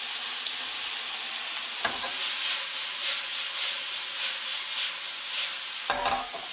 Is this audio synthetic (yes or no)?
no